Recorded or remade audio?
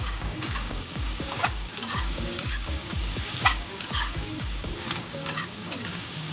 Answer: remade